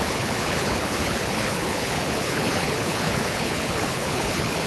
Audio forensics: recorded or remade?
remade